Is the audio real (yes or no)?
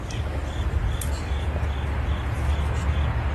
yes